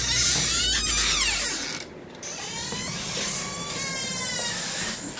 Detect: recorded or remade recorded